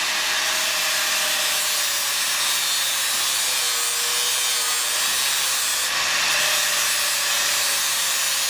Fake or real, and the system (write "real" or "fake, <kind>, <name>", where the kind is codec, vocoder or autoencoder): real